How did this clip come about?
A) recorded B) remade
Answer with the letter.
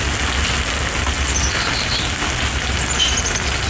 A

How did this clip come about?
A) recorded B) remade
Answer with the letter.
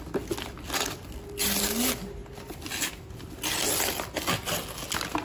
A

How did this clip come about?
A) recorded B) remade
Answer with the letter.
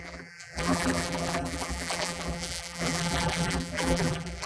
B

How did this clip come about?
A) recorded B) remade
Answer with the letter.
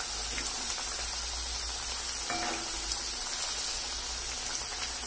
A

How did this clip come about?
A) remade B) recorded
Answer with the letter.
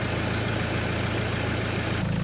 B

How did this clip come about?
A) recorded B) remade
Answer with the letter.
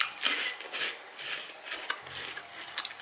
A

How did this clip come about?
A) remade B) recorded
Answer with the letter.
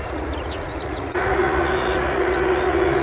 A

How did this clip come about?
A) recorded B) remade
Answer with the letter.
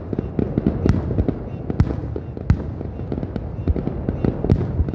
A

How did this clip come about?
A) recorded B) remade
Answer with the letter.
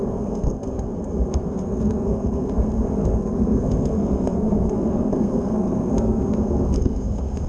B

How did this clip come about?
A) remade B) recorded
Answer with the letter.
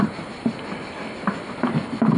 B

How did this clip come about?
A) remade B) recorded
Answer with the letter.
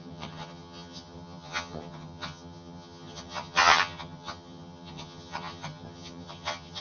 A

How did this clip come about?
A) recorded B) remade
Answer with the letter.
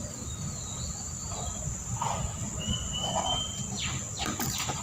A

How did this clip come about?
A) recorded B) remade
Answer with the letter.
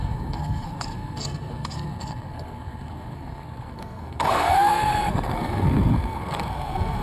B